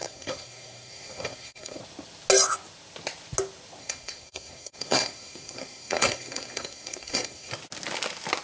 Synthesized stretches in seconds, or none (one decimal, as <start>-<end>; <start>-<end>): 0.0-1.8; 3.8-7.5